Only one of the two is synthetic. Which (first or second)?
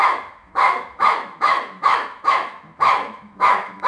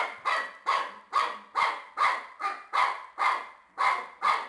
first